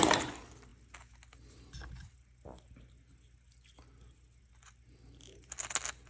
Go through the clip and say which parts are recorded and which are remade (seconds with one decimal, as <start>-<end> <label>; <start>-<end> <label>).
0.0-6.1 recorded